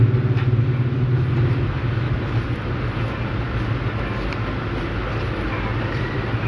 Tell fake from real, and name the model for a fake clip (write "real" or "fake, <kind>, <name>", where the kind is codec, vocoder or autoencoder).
real